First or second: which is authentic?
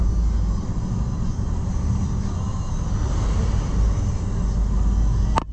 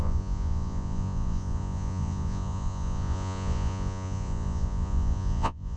first